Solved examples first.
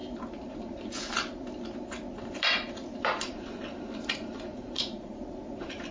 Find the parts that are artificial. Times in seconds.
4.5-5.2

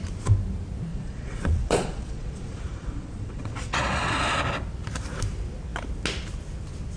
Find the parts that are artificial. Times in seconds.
0.9-4.4

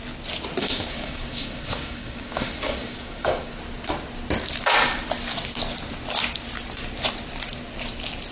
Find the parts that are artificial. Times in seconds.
0.6-3.6

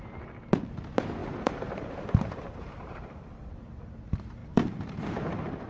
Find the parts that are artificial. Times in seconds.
1.2-3.4; 4.4-5.7

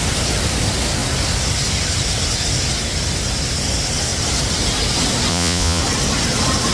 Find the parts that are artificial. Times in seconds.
5.3-5.8

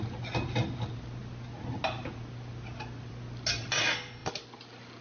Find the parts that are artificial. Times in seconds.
none